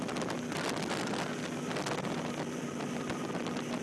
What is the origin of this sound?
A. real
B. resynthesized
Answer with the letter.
A